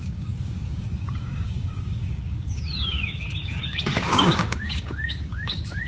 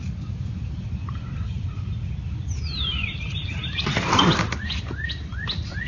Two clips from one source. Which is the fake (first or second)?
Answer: first